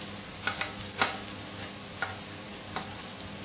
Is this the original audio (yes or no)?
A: yes